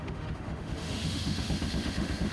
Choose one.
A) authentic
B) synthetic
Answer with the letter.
B